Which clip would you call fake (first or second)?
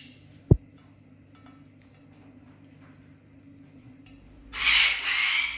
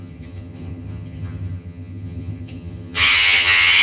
second